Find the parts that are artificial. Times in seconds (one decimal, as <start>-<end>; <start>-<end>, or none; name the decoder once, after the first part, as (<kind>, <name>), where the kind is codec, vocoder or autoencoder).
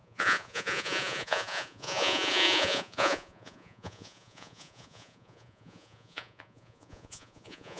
0.0-7.8 (vocoder, Vocos)